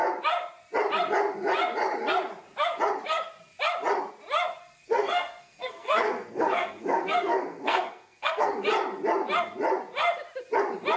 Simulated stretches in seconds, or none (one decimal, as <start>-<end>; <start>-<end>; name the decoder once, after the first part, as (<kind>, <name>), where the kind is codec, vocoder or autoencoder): 4.6-8.5 (codec, SNAC)